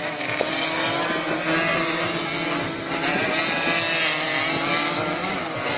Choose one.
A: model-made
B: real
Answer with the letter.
B